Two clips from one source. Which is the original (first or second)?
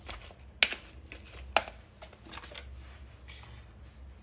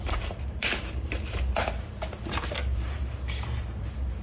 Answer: first